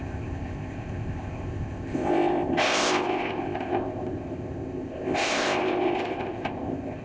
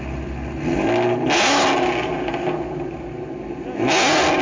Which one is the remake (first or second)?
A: first